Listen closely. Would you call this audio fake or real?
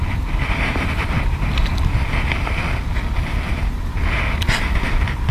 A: real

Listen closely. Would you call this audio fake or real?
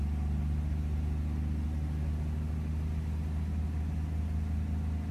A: real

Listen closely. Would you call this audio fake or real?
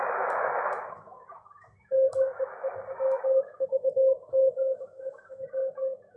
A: fake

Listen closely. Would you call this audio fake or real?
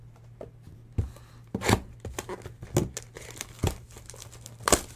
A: real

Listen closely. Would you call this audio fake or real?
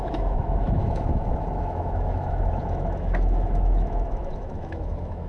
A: fake